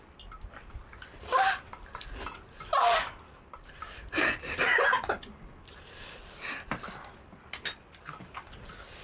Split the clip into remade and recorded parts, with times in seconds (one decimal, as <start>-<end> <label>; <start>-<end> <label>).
0.0-9.0 recorded